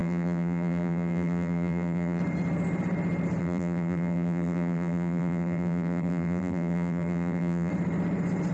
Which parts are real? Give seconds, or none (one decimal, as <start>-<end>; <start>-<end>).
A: 2.2-3.4; 7.7-8.5